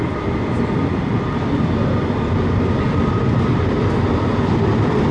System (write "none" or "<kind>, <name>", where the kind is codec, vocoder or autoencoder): none